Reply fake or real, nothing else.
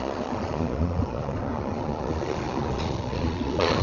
fake